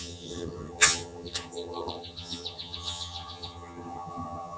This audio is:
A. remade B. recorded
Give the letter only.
A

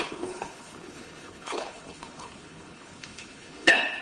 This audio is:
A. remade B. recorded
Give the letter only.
A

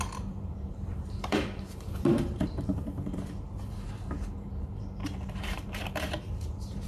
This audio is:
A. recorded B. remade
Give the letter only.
B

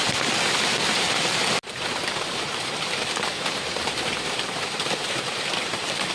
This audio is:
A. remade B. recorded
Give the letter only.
A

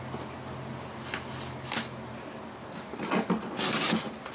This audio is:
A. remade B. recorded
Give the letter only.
B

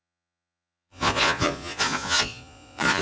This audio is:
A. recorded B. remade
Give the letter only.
B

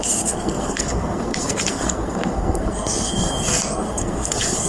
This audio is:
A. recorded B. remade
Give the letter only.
B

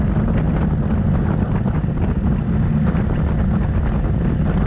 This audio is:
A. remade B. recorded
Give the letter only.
B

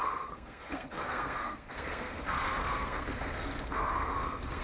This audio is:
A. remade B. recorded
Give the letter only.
A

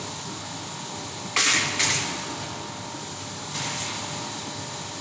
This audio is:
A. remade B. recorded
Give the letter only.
B